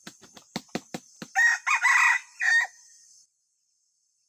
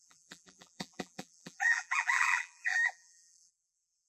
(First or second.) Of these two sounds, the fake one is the second